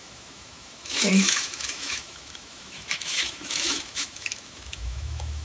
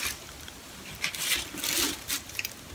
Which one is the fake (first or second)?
first